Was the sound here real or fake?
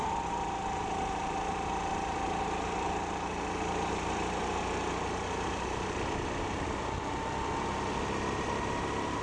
real